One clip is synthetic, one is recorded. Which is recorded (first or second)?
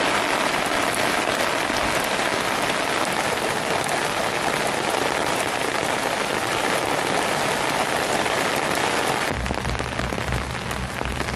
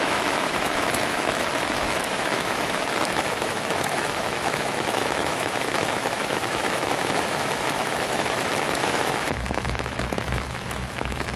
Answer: first